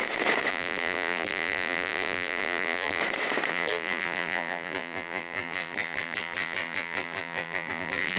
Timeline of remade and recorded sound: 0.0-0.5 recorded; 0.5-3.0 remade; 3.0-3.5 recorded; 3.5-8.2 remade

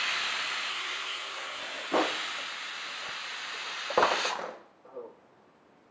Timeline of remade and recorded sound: 0.0-0.7 recorded; 0.7-1.6 remade; 1.6-5.9 recorded